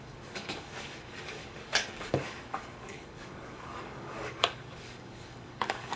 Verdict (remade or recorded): remade